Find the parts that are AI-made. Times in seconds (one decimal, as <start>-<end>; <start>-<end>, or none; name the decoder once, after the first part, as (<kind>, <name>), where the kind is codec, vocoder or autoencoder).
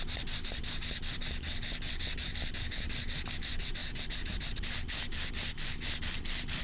none